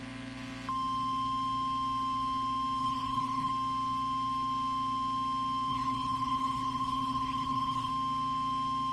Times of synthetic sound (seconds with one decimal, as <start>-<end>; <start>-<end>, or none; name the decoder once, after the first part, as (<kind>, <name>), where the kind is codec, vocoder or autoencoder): 2.8-3.5 (codec, HILCodec); 5.7-7.9